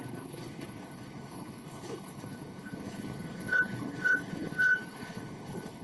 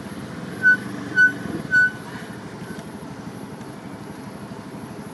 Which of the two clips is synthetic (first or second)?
first